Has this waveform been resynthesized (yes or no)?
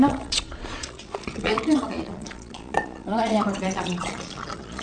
yes